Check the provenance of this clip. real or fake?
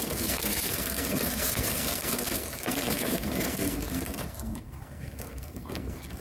fake